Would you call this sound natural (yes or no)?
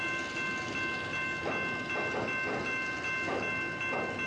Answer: yes